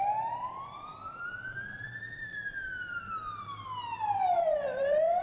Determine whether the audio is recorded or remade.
remade